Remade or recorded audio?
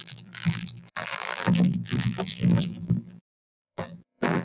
remade